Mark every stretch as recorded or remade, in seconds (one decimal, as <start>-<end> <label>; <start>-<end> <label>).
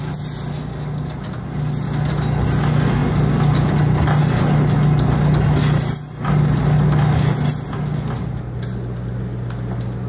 0.0-10.1 recorded